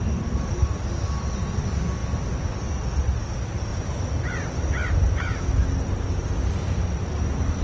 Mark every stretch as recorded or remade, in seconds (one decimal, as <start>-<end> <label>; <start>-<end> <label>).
0.0-7.6 recorded